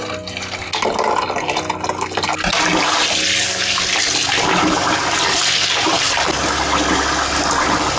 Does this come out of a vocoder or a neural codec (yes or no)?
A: no